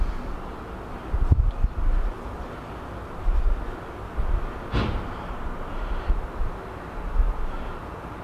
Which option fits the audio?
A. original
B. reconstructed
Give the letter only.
A